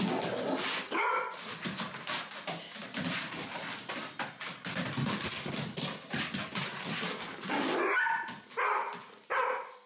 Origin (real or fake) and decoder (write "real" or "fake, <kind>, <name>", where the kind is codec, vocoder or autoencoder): real